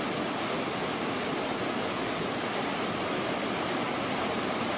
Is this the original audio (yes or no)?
no